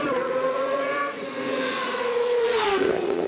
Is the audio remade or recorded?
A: remade